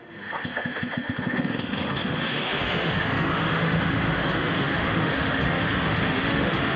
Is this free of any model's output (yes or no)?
no